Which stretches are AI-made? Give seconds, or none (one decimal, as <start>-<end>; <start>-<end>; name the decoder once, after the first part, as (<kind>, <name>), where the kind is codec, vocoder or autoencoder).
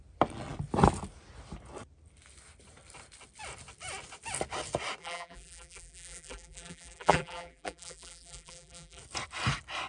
5.0-9.0 (vocoder, BigVGAN v2)